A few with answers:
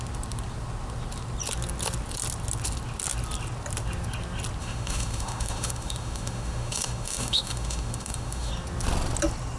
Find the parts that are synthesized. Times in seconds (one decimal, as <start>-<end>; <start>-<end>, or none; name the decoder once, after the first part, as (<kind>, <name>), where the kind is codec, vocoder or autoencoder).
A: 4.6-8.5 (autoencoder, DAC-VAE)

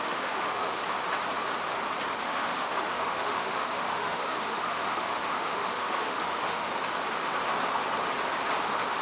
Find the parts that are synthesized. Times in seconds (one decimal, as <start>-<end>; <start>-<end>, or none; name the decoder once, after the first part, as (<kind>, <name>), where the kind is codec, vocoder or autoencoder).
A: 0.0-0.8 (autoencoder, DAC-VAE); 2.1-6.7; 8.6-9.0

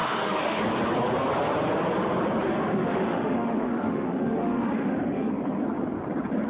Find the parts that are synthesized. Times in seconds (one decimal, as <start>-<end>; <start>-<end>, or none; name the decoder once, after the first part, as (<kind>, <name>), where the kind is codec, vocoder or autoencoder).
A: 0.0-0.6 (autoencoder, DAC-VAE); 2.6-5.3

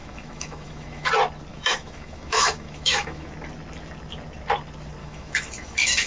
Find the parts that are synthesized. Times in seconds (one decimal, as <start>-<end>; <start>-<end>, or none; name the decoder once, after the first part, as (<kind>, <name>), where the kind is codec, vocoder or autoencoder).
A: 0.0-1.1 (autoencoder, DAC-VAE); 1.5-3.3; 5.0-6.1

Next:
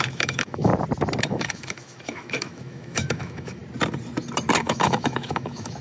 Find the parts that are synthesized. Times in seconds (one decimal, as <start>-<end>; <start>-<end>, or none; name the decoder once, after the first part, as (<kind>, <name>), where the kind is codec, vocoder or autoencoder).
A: 0.0-0.7 (autoencoder, DAC-VAE); 1.2-3.6; 4.6-5.8

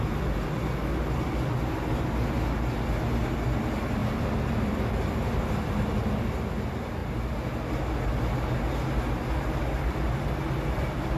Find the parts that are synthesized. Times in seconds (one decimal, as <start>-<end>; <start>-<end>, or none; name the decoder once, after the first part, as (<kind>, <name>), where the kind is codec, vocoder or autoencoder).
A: none